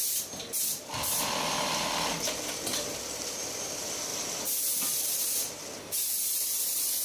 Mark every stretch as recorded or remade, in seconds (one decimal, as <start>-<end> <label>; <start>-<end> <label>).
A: 0.0-7.0 recorded